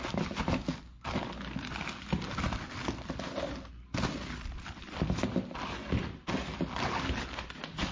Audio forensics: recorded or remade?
recorded